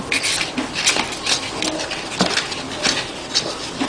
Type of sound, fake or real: fake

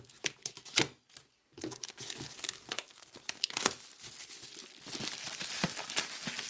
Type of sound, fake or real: real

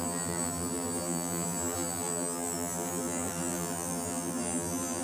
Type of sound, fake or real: fake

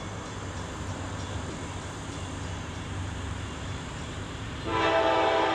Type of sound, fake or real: fake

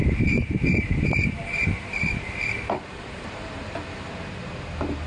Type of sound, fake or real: fake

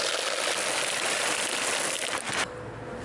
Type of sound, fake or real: real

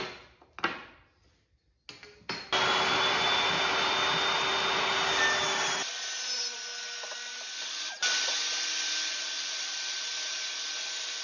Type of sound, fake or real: real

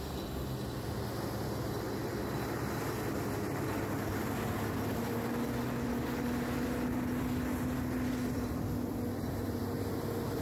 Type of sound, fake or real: real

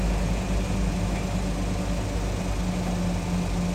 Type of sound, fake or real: real